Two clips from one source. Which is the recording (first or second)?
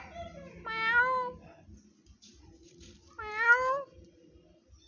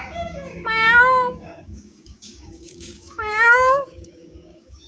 first